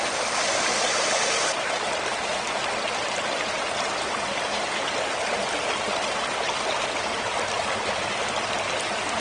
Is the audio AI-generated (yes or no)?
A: no